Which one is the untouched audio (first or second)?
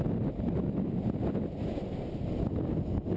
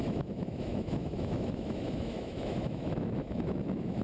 first